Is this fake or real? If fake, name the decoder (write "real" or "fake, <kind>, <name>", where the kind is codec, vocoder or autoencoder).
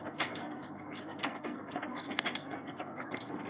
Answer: fake, codec, SNAC